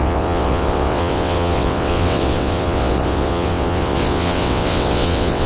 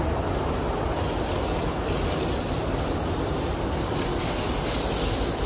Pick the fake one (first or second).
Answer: first